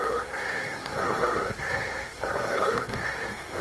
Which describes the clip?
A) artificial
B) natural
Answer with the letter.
A